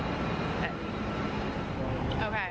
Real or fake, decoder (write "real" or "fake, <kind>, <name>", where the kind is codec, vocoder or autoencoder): real